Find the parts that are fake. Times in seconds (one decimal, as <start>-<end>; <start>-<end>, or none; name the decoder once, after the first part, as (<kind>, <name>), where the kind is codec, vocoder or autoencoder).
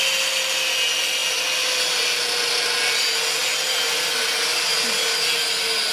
none